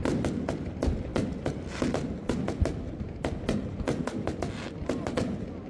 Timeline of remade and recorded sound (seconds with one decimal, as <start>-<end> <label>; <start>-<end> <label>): 0.0-5.7 recorded